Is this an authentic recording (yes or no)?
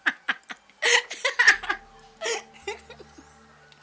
yes